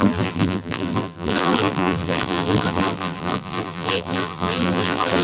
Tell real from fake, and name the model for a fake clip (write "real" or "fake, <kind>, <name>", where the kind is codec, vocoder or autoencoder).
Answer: fake, vocoder, BigVGAN v2